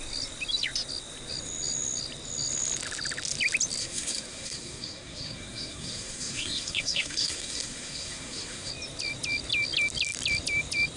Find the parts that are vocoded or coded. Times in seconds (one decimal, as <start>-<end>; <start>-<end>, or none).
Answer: 3.8-8.7